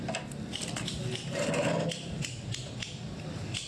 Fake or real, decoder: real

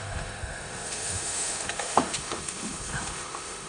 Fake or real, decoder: fake, autoencoder, DAC-VAE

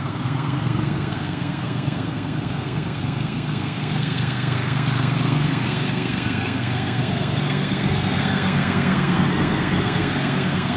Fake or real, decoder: fake, codec, SNAC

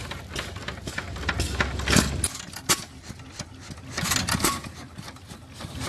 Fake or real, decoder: real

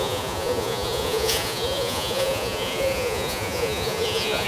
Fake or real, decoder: fake, vocoder, Vocos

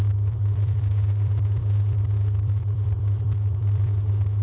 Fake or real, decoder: fake, vocoder, BigVGAN v2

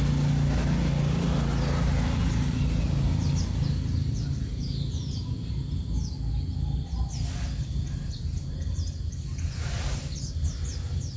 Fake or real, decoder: real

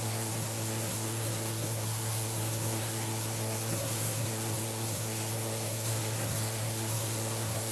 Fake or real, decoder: fake, codec, SNAC